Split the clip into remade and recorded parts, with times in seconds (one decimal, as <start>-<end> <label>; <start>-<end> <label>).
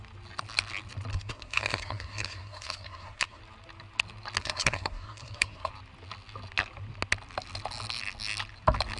0.0-1.1 recorded; 1.1-3.4 remade; 3.4-4.4 recorded; 4.4-5.7 remade; 5.7-9.0 recorded